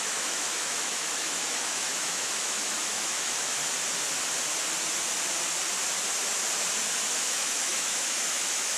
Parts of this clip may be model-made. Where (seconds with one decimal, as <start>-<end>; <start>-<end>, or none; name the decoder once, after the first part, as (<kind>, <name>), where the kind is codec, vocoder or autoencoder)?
0.0-3.6 (autoencoder, DAC-VAE); 7.1-8.8